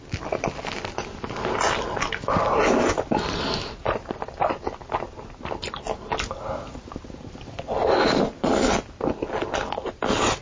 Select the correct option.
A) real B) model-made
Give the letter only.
A